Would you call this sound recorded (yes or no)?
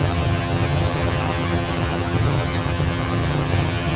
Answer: no